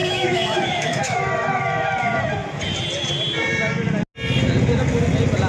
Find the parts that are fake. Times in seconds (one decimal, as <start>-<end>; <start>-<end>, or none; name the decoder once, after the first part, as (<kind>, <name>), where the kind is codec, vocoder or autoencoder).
0.0-1.6 (autoencoder, DAC-VAE)